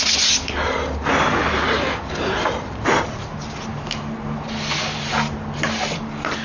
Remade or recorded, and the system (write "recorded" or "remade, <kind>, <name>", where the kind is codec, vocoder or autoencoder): recorded